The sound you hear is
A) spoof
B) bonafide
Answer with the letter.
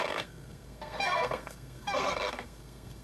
A